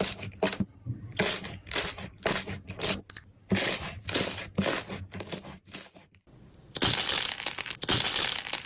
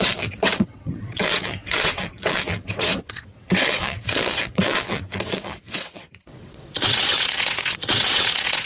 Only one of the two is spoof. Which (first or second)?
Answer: second